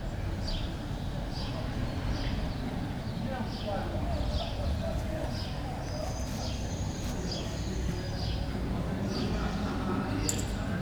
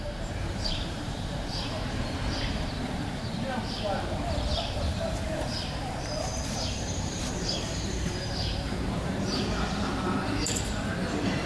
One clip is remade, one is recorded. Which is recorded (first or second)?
first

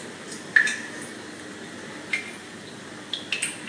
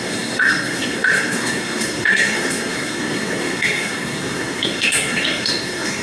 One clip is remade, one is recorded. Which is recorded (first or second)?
first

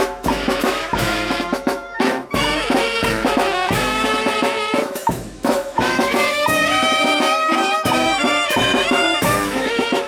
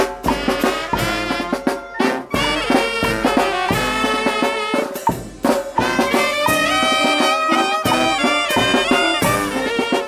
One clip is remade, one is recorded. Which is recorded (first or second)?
second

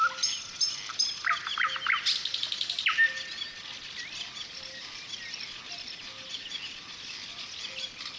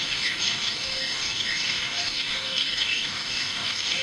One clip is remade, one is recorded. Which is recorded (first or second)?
first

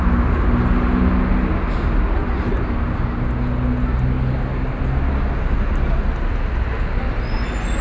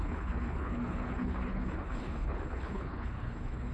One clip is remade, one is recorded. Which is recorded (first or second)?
first